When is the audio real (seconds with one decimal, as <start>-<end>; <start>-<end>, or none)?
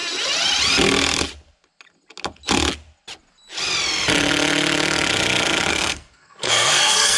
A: 0.0-5.7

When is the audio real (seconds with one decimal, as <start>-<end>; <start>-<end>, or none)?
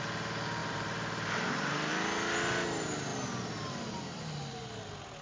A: 0.0-0.6; 1.9-5.2